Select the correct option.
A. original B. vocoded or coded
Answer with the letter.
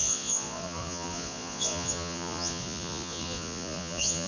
B